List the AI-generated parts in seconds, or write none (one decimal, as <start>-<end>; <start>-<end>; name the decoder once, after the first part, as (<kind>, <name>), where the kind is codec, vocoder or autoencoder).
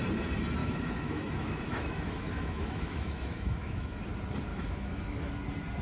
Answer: 0.6-4.0 (autoencoder, DAC-VAE); 4.5-5.3